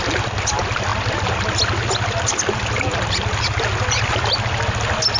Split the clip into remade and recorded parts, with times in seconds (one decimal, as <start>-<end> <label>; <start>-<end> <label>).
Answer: 0.0-5.2 recorded